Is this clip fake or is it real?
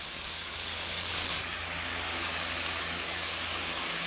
fake